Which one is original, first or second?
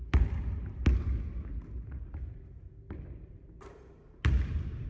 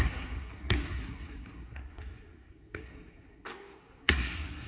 first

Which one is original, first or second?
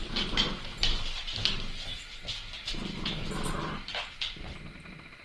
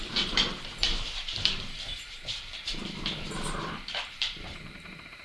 first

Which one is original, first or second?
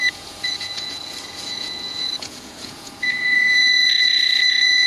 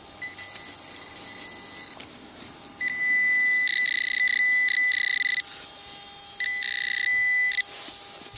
second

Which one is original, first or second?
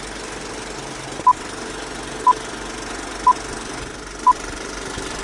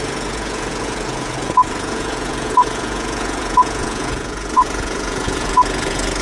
first